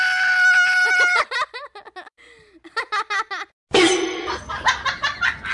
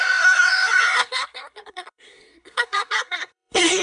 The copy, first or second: second